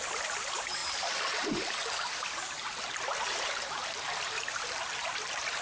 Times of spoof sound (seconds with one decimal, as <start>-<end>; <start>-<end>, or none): 0.0-0.8; 3.2-3.8